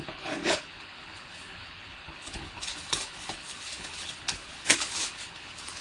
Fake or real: fake